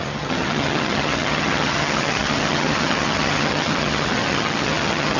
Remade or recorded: remade